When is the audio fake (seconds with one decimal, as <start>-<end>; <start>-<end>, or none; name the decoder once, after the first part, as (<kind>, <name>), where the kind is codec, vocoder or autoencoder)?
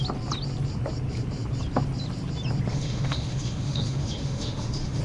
2.7-5.0 (autoencoder, DAC-VAE)